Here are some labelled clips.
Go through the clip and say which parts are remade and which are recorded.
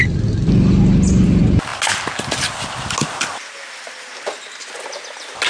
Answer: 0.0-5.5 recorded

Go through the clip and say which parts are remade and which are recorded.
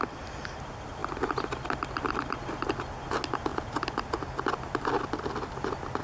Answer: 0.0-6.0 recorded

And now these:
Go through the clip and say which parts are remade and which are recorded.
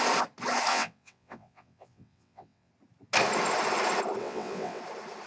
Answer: 0.0-0.7 recorded; 0.7-2.7 remade; 2.7-4.2 recorded; 4.2-4.8 remade; 4.8-5.3 recorded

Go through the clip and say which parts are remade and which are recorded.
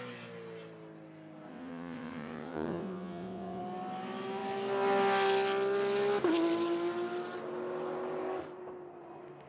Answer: 0.0-1.5 recorded; 1.5-3.6 remade; 3.6-9.5 recorded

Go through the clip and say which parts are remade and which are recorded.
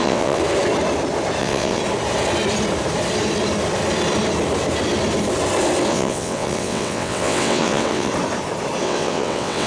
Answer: 0.0-0.4 remade; 0.4-1.4 recorded; 1.4-1.8 remade; 1.8-5.9 recorded; 5.9-8.1 remade; 8.1-8.8 recorded; 8.8-9.7 remade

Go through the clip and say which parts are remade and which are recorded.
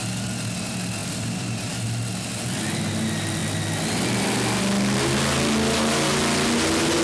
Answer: 0.0-7.0 recorded